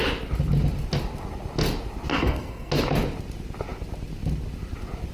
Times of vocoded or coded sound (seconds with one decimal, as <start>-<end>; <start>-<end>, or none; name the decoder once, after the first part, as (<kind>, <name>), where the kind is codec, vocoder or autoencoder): 2.1-2.7 (codec, SNAC)